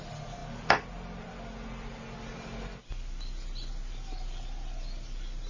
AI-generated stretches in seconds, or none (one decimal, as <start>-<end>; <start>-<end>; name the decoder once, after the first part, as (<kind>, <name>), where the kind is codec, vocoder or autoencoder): none